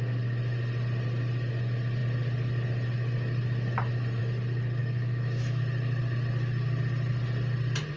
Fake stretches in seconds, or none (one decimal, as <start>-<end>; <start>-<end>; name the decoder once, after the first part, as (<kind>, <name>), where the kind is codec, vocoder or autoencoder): 4.8-5.6 (autoencoder, DAC-VAE)